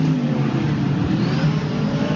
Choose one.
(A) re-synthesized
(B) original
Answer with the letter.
A